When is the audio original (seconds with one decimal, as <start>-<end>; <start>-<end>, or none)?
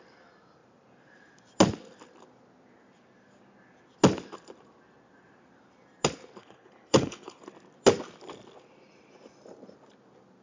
0.0-6.4; 7.4-10.4